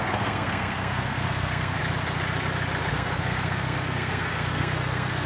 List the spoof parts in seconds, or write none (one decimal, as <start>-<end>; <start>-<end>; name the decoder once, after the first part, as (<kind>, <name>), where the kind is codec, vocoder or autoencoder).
0.0-1.8 (codec, SNAC); 2.9-5.3